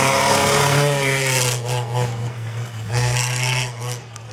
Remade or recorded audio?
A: remade